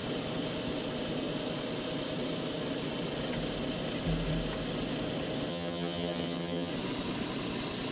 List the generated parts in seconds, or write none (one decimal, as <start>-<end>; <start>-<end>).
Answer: 5.5-6.7